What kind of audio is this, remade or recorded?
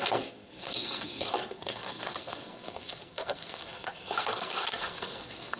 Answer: remade